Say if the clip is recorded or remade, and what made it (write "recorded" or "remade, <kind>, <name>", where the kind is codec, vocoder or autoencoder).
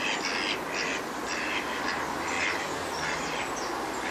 recorded